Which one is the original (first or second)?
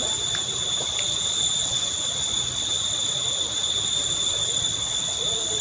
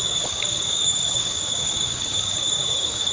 first